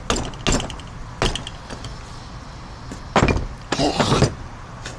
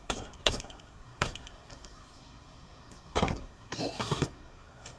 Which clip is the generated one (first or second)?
second